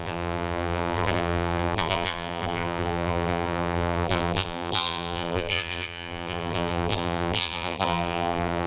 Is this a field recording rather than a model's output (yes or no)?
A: no